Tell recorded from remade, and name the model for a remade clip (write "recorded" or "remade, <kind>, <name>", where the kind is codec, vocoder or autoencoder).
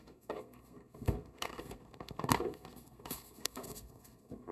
remade, codec, SNAC